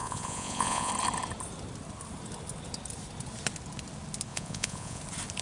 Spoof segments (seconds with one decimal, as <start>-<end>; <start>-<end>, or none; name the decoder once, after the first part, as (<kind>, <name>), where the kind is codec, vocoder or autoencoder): 0.0-0.9 (vocoder, Vocos); 4.3-5.0